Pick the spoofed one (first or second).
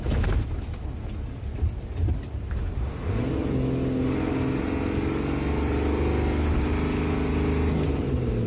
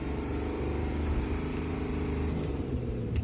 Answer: second